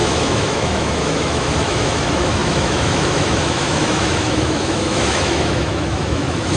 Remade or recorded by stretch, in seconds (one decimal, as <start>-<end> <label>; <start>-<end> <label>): 0.0-6.6 remade